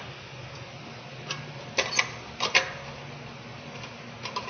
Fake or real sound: real